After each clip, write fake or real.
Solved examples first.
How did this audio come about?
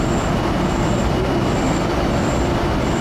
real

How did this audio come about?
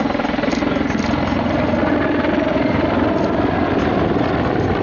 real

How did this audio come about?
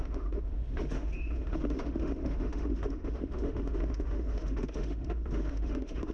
fake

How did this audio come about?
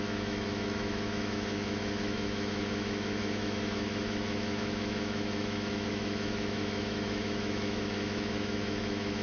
fake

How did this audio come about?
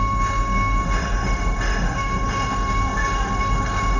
fake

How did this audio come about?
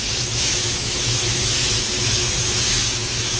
fake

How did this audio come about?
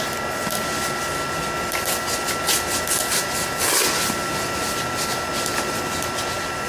real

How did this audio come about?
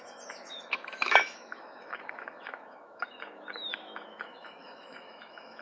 fake